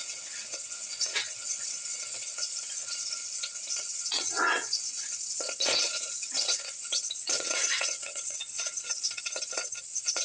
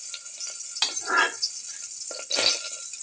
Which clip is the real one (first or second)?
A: second